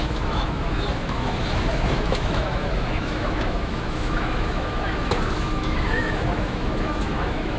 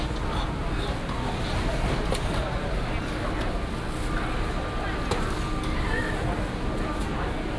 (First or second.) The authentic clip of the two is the second